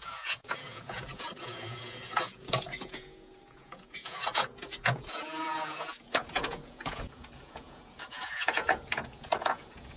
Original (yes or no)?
no